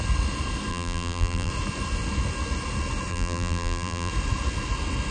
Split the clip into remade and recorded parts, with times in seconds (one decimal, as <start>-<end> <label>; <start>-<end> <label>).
0.0-0.7 recorded; 0.7-1.5 remade; 1.5-3.1 recorded; 3.1-4.1 remade; 4.1-5.1 recorded